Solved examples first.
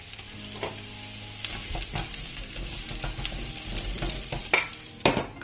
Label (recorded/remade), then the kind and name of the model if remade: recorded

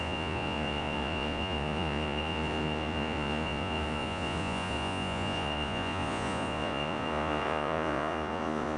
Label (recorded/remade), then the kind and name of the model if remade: remade, vocoder, Vocos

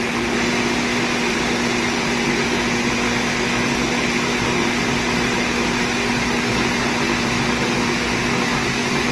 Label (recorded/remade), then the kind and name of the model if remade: recorded